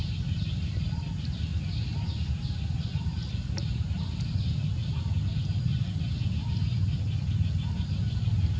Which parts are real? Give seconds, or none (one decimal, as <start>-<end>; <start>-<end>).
0.0-8.6

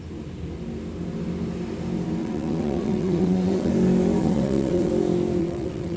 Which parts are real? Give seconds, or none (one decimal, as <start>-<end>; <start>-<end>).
0.0-2.2; 3.7-4.2; 4.9-5.4

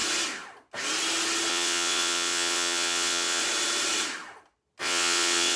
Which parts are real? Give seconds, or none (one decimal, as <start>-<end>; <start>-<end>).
0.0-1.5; 3.4-4.8

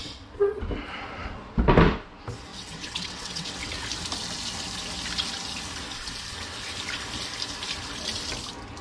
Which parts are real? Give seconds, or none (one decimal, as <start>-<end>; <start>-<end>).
0.6-2.5; 3.7-8.8

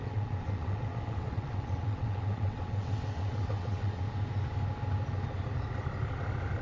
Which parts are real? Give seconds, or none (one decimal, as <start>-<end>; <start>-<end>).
4.0-6.6

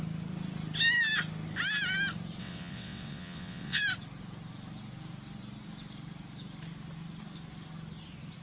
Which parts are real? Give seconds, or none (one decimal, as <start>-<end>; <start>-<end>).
0.0-2.4; 3.8-8.4

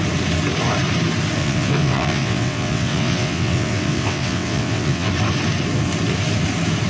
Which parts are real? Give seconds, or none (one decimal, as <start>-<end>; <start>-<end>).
0.0-1.4; 5.1-6.9